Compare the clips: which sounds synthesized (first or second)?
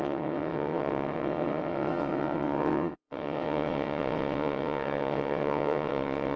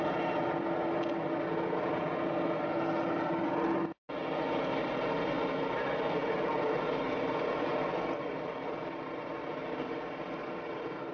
first